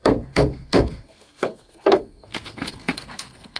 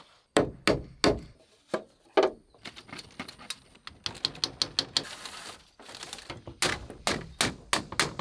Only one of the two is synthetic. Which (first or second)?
first